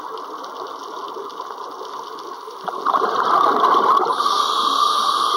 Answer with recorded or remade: recorded